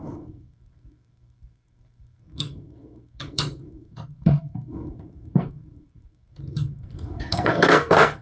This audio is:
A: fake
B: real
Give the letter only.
A